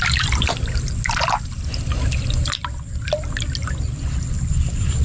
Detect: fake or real real